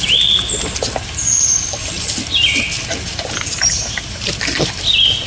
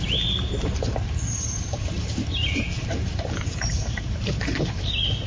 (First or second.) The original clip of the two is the first